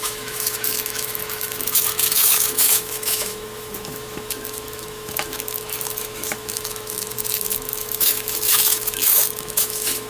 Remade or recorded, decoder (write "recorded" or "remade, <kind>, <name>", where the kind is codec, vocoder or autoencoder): remade, autoencoder, DAC-VAE